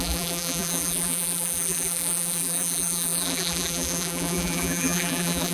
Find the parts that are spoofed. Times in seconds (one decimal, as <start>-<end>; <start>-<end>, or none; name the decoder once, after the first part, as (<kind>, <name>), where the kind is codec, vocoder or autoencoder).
0.0-5.5 (vocoder, BigVGAN v2)